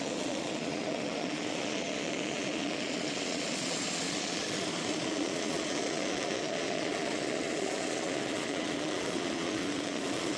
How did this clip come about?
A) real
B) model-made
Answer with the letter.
B